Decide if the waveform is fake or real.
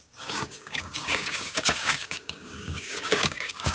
fake